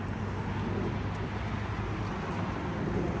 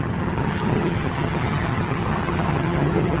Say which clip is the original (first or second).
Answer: first